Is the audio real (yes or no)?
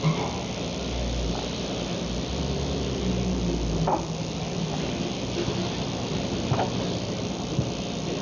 yes